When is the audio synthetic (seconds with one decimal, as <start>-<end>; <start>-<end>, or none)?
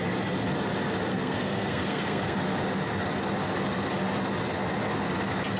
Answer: 1.1-2.4